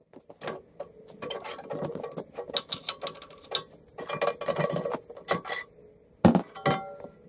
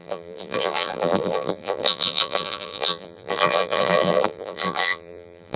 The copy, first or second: second